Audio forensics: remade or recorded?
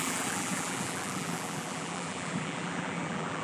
remade